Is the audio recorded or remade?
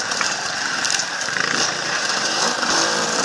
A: remade